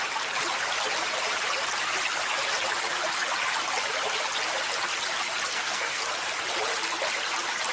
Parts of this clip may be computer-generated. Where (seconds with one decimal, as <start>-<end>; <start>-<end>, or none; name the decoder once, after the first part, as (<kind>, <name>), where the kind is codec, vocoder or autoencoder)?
5.5-6.0 (codec, SNAC)